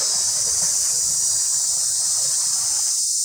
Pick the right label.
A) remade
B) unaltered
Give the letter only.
B